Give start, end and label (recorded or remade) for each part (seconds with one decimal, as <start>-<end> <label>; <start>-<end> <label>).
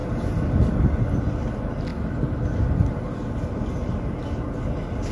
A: 0.0-1.9 recorded; 1.9-4.0 remade; 4.0-5.1 recorded